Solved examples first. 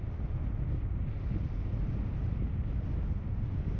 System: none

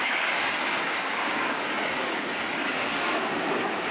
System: codec, DAC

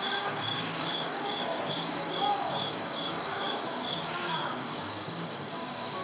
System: codec, DAC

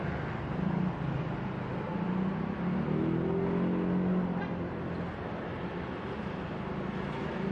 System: none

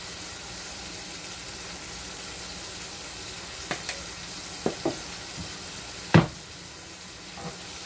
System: none